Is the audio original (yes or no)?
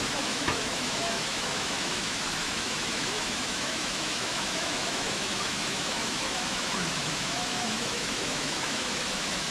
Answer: no